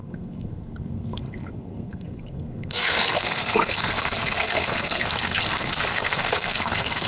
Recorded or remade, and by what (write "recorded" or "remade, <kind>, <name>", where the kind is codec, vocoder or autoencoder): remade, codec, SNAC